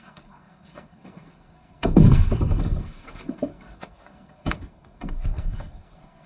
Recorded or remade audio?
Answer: remade